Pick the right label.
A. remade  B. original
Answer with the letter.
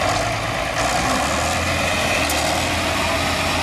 B